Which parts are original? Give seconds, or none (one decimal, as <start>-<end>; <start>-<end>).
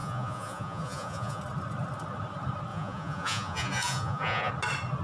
1.4-2.7; 4.5-5.0